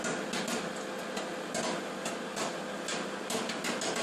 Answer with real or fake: real